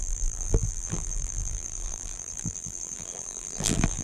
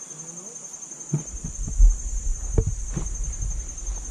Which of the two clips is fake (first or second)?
first